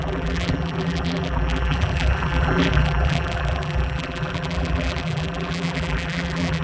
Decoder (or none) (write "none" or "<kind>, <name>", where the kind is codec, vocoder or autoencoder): vocoder, BigVGAN v2